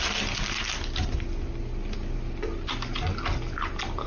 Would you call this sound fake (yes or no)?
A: no